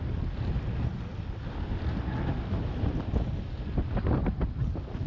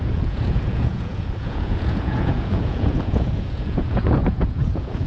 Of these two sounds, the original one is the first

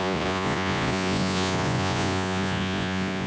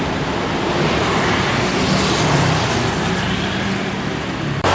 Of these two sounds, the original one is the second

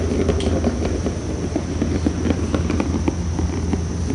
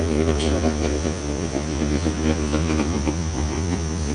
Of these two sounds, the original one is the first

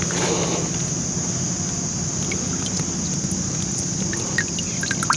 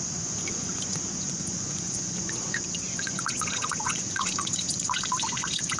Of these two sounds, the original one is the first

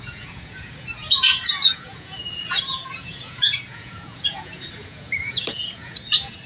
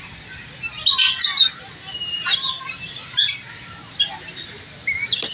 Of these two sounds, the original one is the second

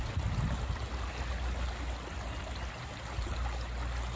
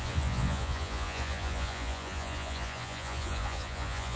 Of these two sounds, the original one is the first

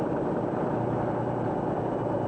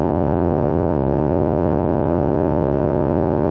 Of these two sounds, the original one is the first